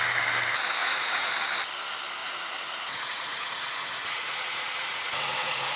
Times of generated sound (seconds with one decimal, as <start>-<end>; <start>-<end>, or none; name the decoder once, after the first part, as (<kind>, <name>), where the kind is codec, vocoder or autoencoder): 0.8-1.3 (vocoder, Vocos); 2.2-5.8